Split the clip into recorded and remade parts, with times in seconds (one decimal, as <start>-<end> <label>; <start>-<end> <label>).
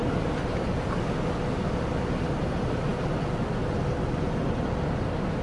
0.0-5.4 recorded